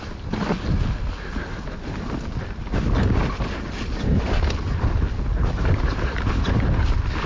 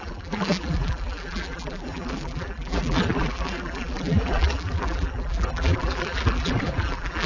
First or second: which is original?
first